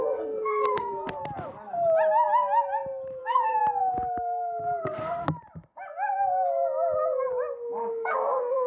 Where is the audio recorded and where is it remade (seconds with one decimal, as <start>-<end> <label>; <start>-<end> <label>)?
0.0-1.2 remade; 1.2-3.2 recorded; 3.2-3.6 remade; 3.6-4.8 recorded; 4.8-5.2 remade; 5.2-7.9 recorded; 7.9-8.7 remade

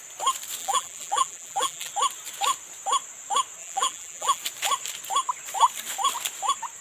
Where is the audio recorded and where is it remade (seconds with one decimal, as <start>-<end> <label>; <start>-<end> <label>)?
0.0-0.6 recorded; 0.6-1.9 remade; 1.9-3.6 recorded; 3.6-4.4 remade; 4.4-6.8 recorded

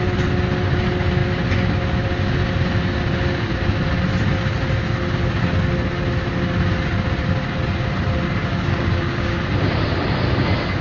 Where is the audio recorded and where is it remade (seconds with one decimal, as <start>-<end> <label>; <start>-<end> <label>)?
0.0-8.4 recorded; 8.4-9.4 remade; 9.4-10.8 recorded

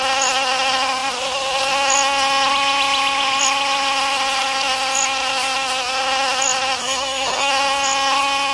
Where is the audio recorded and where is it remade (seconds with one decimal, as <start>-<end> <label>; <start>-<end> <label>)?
0.0-6.8 recorded; 6.8-7.5 remade; 7.5-8.5 recorded